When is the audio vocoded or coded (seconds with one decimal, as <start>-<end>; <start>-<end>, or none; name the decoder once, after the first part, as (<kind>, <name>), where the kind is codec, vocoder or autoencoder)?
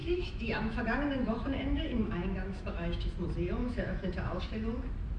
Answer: 0.0-3.1 (autoencoder, DAC-VAE); 3.6-4.4